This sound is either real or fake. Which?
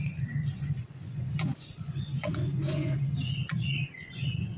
fake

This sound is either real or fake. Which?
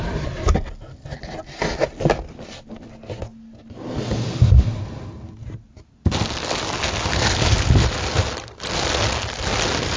real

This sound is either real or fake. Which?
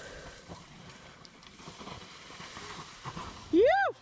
fake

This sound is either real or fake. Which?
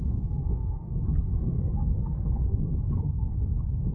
fake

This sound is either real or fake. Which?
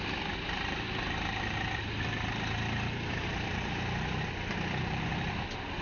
real